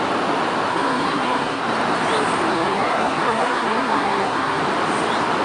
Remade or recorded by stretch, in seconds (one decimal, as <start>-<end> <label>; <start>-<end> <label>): 0.0-0.7 recorded; 0.7-1.6 remade; 1.6-2.5 recorded; 2.5-4.6 remade; 4.6-5.4 recorded